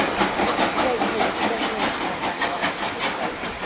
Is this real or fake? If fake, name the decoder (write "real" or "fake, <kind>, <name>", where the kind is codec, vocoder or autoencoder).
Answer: real